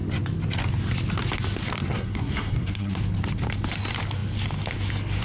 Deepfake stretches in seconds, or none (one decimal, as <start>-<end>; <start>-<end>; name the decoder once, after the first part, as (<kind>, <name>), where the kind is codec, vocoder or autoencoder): 1.8-3.0 (codec, SNAC)